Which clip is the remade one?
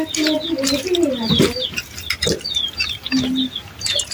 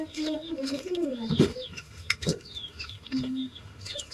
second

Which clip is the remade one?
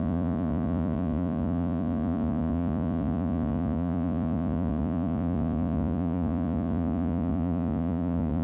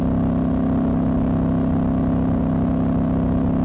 first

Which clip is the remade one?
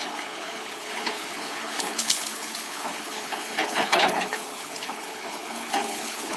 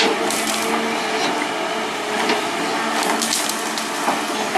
first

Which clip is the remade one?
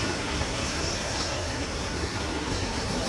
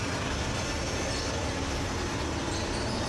first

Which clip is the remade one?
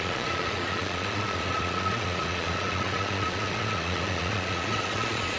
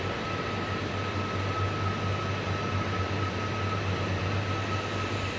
first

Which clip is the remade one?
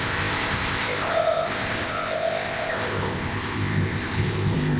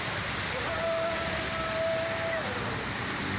first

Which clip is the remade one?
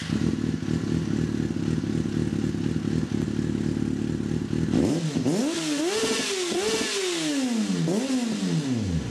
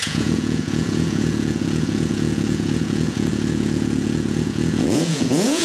second